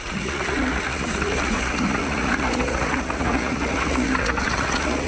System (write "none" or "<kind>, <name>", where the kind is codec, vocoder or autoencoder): vocoder, Vocos